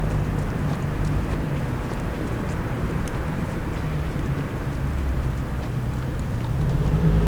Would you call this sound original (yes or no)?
no